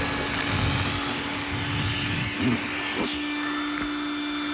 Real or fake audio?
real